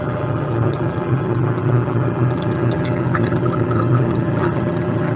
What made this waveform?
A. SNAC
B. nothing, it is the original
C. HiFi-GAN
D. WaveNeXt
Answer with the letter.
C